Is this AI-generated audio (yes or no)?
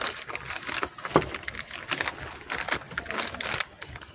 no